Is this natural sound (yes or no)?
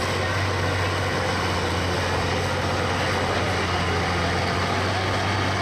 yes